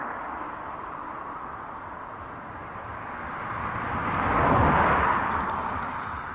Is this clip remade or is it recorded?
recorded